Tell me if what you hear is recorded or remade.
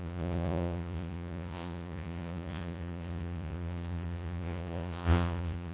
remade